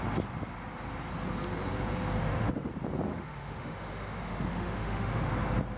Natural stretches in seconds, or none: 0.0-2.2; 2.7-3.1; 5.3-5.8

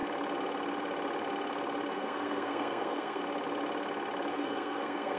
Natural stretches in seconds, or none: 0.0-1.9; 3.2-4.3

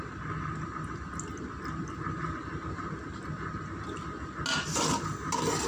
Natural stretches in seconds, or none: 0.0-5.7

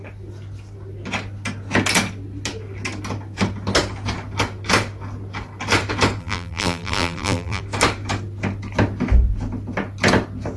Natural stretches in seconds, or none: 0.0-6.2; 7.6-10.6

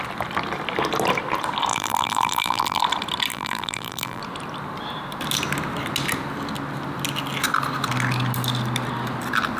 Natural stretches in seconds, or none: 0.0-1.7; 2.8-3.3; 4.2-9.6

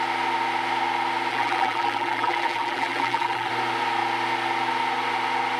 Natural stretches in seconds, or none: 0.0-1.3; 3.5-5.6